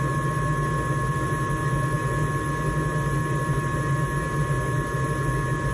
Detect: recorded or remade recorded